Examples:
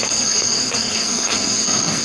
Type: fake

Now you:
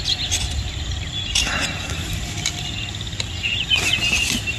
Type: real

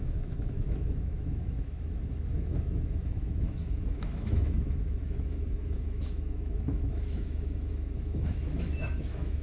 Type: fake